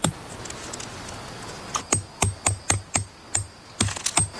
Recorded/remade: recorded